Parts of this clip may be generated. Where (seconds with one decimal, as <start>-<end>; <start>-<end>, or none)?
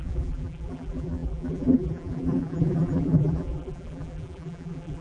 0.0-5.0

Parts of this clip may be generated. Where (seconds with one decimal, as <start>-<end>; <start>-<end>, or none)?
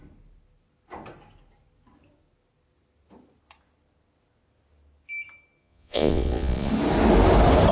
5.6-6.7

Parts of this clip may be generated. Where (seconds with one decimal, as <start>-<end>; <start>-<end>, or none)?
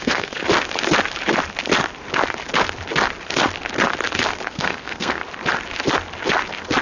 0.0-0.4; 4.5-5.2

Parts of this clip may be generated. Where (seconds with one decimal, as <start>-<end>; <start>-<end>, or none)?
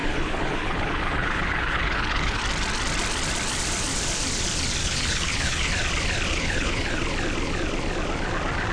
0.0-2.4; 4.8-5.7; 6.3-7.0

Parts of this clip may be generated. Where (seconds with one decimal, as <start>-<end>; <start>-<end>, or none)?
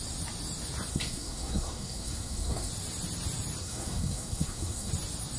0.9-2.7; 3.6-4.9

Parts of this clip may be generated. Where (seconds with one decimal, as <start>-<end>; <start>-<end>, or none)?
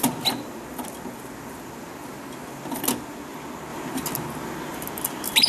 none